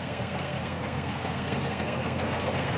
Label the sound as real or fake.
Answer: fake